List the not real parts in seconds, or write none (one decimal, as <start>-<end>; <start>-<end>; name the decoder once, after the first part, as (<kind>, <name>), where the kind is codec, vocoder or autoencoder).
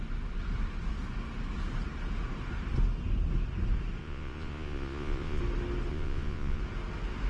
4.0-5.4 (vocoder, Vocos); 5.9-6.6